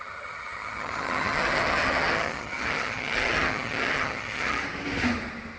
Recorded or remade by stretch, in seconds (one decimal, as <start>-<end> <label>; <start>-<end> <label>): 0.0-4.6 remade; 4.6-5.6 recorded